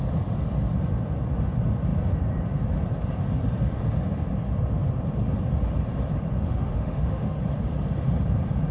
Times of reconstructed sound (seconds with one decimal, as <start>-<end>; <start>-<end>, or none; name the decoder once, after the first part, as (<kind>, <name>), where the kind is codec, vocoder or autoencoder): 6.3-7.4 (autoencoder, DAC-VAE)